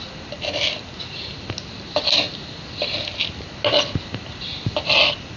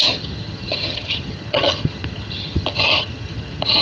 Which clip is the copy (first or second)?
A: second